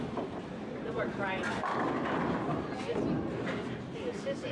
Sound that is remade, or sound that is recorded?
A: recorded